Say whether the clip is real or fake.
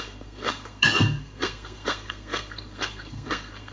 fake